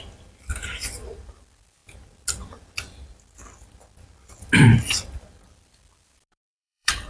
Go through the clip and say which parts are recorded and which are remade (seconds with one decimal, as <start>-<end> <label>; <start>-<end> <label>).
0.0-1.8 remade; 1.8-5.3 recorded; 5.3-7.1 remade

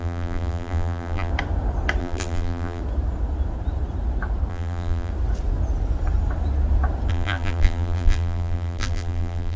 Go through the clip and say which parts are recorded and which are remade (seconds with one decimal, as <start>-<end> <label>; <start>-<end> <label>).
0.0-1.3 remade; 1.3-2.0 recorded; 2.0-2.8 remade; 2.8-4.5 recorded; 4.5-5.1 remade; 5.1-7.1 recorded; 7.1-9.6 remade

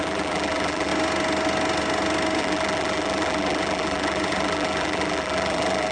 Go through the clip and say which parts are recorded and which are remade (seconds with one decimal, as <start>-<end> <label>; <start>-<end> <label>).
0.0-0.9 remade; 0.9-2.4 recorded; 2.4-5.9 remade

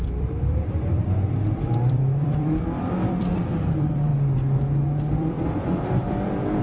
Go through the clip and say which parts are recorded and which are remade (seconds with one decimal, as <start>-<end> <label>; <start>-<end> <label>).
0.0-4.1 remade; 4.1-5.1 recorded; 5.1-6.6 remade

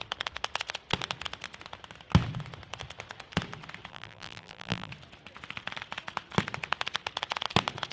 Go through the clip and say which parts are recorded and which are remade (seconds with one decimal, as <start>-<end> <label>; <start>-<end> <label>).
0.0-3.9 recorded; 3.9-4.9 remade; 4.9-7.9 recorded

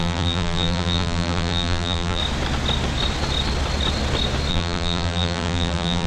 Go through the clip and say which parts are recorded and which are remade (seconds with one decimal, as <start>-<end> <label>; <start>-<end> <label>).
0.0-2.2 remade; 2.2-4.5 recorded; 4.5-6.1 remade

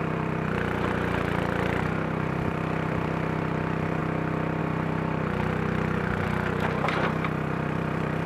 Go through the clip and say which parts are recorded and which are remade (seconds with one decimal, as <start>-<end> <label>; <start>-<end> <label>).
0.0-4.0 remade; 4.0-4.6 recorded; 4.6-8.3 remade

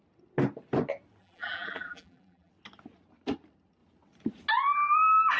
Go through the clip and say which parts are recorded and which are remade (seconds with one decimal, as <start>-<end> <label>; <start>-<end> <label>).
0.0-1.2 recorded; 1.2-2.5 remade; 2.5-5.4 recorded